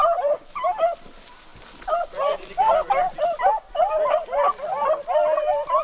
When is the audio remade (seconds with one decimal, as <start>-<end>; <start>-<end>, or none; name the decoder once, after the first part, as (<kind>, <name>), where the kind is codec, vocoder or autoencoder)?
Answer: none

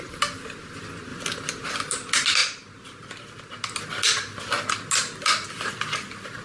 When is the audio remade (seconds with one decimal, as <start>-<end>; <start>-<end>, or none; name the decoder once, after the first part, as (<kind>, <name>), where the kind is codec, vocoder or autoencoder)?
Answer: none

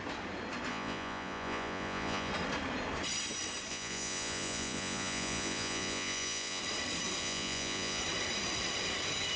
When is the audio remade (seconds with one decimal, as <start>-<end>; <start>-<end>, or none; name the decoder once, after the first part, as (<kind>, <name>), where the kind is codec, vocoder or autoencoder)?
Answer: 0.7-2.3 (vocoder, Vocos); 3.7-6.6; 7.2-8.0